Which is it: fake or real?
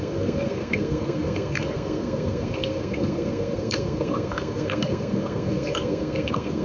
fake